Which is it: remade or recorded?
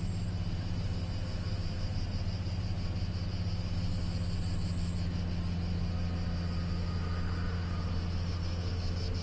recorded